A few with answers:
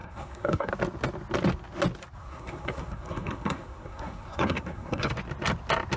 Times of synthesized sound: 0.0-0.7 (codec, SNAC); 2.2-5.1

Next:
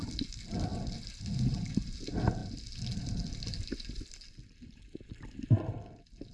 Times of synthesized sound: none